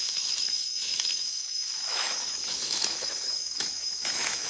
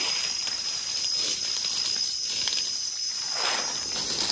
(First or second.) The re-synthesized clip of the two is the first